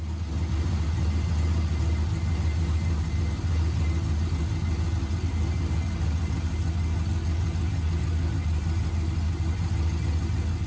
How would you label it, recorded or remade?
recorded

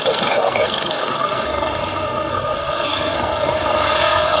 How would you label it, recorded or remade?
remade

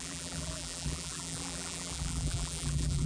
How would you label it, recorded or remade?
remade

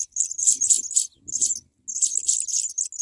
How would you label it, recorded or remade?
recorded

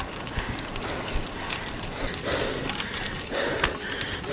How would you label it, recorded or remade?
recorded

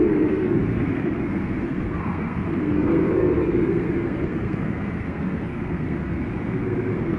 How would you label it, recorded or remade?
remade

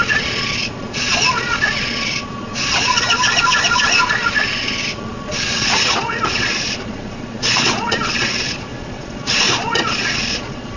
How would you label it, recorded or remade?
remade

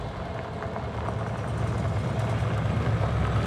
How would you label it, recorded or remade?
recorded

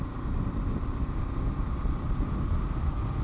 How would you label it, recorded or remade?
recorded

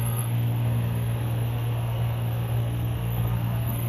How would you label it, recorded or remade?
remade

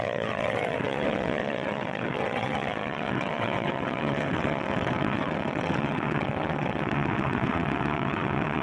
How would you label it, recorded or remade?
remade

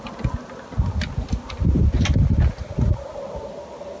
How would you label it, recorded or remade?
recorded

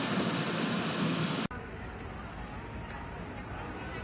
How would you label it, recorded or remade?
recorded